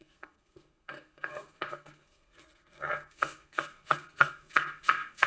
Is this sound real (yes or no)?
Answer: no